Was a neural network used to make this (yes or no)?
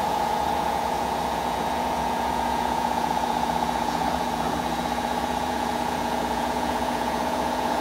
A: yes